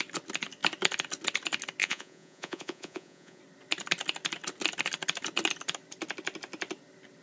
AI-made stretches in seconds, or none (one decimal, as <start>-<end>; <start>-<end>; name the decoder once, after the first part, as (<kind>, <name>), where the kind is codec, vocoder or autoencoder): 1.8-3.4 (vocoder, Vocos)